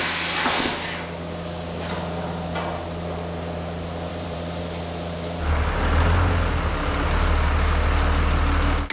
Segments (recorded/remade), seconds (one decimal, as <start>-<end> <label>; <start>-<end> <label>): 0.0-4.1 recorded; 4.1-4.6 remade; 4.6-8.9 recorded